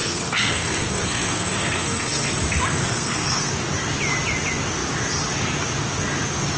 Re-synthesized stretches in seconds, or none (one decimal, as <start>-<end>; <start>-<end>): 0.0-2.3; 2.8-3.5